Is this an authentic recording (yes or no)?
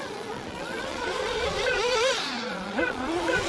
no